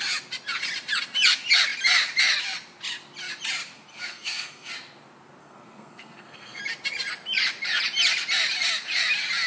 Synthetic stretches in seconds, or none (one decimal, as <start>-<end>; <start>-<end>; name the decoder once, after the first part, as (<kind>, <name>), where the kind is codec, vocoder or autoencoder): 3.9-4.7 (codec, SNAC); 5.4-6.6